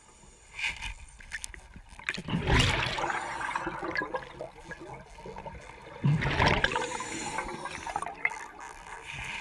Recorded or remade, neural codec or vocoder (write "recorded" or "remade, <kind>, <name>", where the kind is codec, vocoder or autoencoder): recorded